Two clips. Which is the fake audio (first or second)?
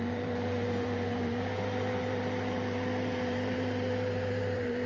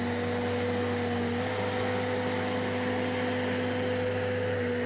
first